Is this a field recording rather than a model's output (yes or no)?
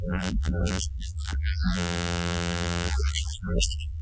no